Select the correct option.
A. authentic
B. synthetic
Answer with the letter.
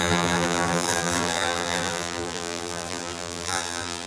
B